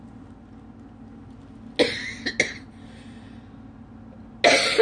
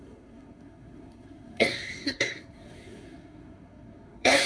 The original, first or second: first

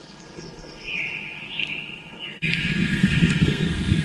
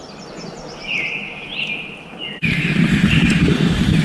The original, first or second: second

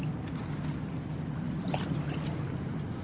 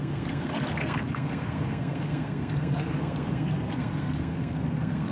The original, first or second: first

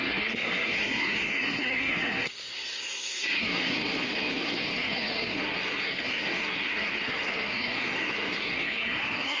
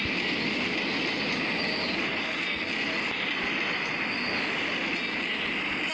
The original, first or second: second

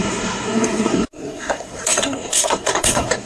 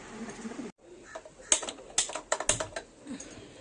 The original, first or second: second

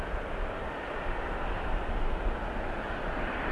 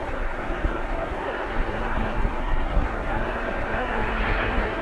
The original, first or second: first